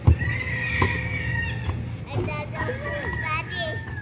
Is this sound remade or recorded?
recorded